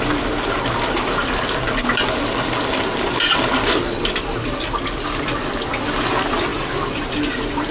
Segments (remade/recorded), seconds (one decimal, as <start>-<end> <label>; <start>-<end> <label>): 0.0-7.7 recorded